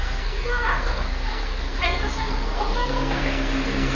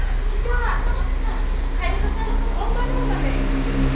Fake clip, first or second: first